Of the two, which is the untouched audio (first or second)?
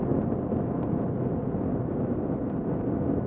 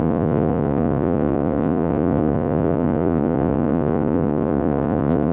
first